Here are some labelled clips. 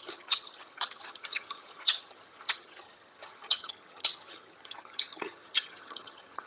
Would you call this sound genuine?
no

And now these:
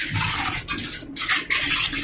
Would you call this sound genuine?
no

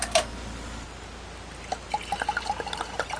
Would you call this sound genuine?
yes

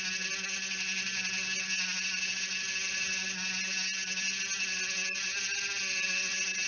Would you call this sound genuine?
yes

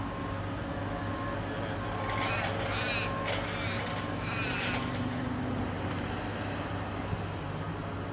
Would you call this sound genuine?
yes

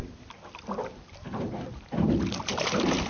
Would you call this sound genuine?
yes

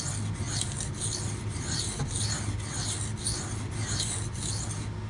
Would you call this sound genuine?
yes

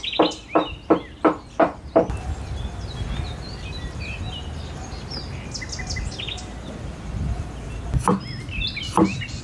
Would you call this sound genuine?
yes